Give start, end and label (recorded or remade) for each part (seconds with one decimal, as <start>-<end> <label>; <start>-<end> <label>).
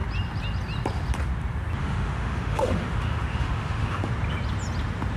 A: 0.0-1.8 recorded; 1.8-4.1 remade; 4.1-5.2 recorded